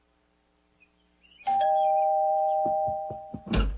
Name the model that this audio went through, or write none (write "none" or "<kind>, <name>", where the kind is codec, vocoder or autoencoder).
none